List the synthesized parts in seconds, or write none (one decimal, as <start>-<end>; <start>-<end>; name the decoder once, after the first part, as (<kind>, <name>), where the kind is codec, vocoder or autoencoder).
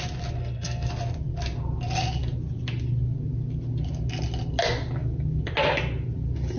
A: 0.4-0.9 (codec, SNAC)